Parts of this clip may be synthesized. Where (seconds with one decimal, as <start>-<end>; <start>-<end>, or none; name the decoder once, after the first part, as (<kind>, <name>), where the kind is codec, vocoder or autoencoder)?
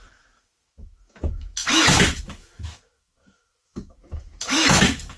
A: 0.0-5.2 (autoencoder, DAC-VAE)